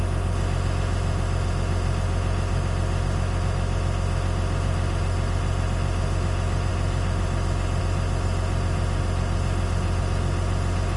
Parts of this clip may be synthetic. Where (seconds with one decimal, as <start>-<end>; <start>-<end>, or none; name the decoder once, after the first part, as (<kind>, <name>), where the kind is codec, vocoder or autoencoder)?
none